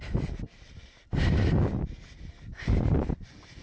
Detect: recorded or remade remade